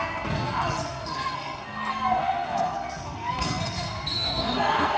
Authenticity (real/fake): fake